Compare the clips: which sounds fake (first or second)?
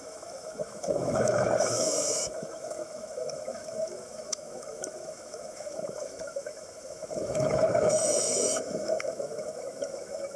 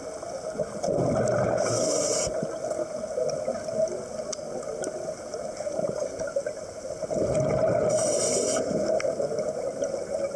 first